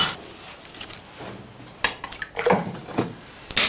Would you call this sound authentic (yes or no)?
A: yes